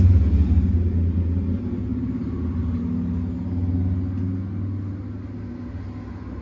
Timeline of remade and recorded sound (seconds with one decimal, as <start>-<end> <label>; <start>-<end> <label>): 0.0-1.9 recorded; 1.9-2.8 remade; 2.8-6.4 recorded